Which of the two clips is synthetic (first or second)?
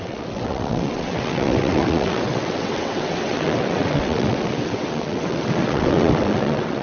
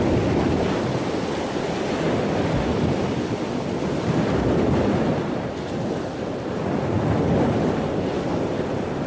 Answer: first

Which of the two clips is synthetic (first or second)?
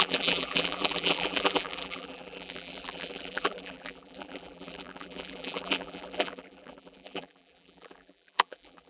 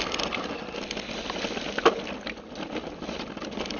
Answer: first